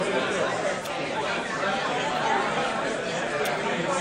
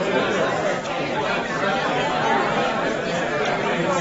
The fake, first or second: first